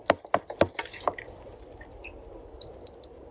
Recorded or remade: recorded